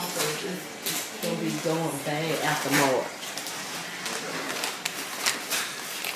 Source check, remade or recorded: recorded